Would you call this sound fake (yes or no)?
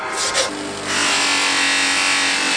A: no